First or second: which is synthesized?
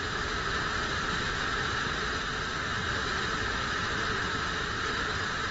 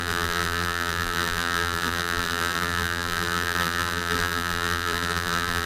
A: second